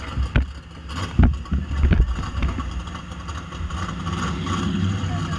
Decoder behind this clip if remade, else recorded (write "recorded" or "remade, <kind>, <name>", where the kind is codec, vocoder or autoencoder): recorded